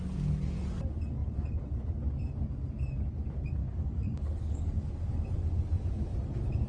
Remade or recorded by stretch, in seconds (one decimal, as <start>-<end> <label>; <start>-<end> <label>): 0.0-3.6 recorded; 3.6-4.9 remade; 4.9-6.7 recorded